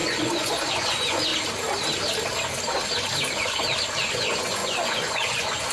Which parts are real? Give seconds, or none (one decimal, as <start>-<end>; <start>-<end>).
1.3-4.0